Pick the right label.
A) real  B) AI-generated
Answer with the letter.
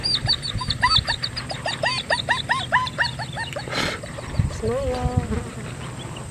A